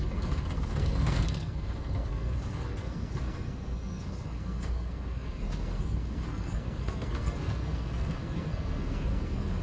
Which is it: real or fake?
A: fake